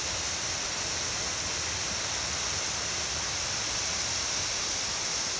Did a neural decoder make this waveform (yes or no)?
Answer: no